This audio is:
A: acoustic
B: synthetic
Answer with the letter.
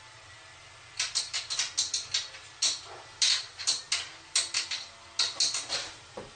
A